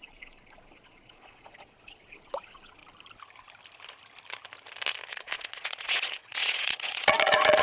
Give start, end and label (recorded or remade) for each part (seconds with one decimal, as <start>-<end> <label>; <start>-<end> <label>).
0.0-2.8 remade; 2.8-5.1 recorded; 5.1-7.6 remade